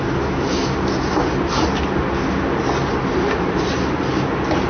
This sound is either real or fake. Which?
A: real